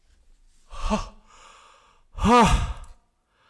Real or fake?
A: real